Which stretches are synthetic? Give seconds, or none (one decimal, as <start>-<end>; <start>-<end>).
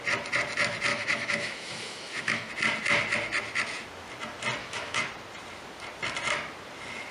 0.9-2.5; 4.6-5.1